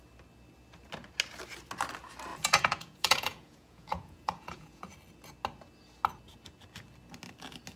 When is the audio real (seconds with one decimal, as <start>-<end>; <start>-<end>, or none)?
0.0-2.3; 4.9-7.8